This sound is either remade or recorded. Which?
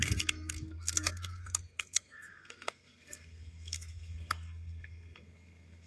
remade